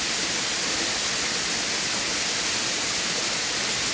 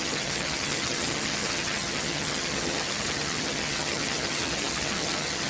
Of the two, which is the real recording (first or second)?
first